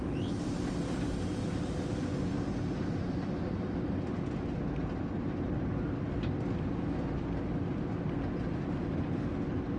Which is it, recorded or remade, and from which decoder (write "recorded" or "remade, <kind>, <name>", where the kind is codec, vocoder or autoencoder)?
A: recorded